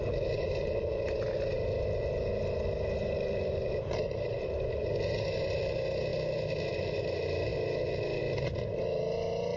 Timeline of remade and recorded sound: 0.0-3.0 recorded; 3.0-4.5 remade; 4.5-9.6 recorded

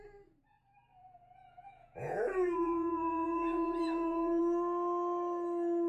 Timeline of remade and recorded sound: 0.0-0.9 recorded; 0.9-4.4 remade; 4.4-5.9 recorded

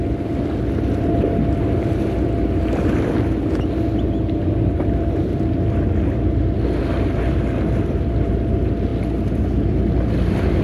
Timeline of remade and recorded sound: 0.0-10.6 recorded

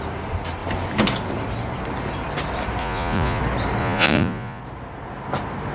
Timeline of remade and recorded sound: 0.0-2.8 recorded; 2.8-3.4 remade; 3.4-3.8 recorded; 3.8-4.6 remade; 4.6-5.7 recorded

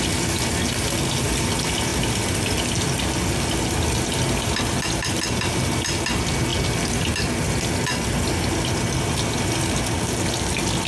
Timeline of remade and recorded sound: 0.0-10.9 recorded

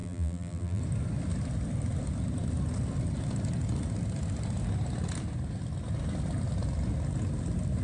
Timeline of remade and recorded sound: 0.0-0.8 remade; 0.8-7.8 recorded

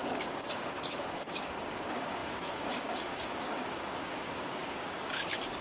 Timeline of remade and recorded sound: 0.0-5.6 remade

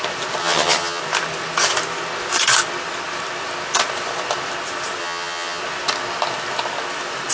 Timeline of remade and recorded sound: 0.0-0.4 recorded; 0.4-1.0 remade; 1.0-5.0 recorded; 5.0-5.6 remade; 5.6-7.3 recorded